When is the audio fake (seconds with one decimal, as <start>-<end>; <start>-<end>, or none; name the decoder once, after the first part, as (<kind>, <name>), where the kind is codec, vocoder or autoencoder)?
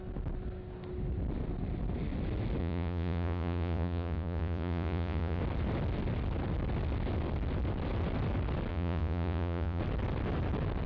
2.6-5.4 (vocoder, Vocos); 8.7-9.8